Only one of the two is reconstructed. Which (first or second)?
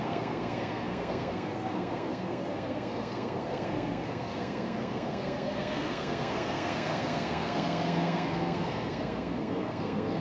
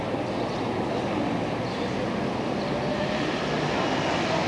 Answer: first